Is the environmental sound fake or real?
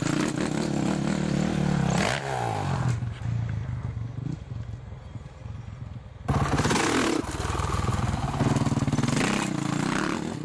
real